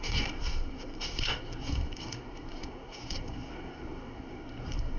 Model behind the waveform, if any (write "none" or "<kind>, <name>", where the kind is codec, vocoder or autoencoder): codec, SNAC